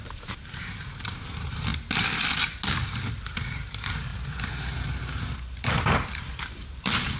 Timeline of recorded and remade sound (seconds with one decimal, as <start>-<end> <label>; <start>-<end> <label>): 0.0-1.7 remade; 1.7-3.1 recorded; 3.1-4.1 remade; 4.1-5.2 recorded; 5.2-7.2 remade